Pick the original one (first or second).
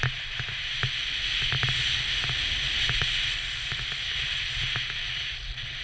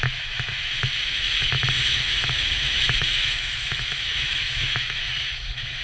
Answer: first